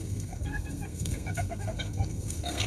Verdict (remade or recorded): remade